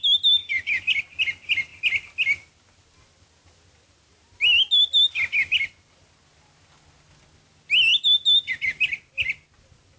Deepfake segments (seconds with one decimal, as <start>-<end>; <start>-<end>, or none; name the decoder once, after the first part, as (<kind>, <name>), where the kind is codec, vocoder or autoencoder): 0.4-1.0 (vocoder, BigVGAN v2)